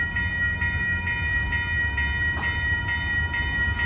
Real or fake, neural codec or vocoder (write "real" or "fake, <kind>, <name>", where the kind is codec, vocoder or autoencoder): real